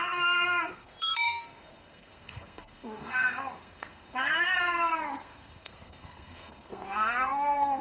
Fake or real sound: fake